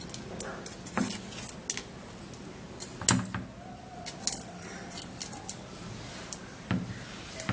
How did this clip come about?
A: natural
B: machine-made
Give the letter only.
A